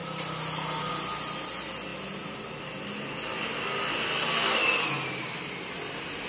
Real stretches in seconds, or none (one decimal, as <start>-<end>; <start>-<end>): 0.0-6.3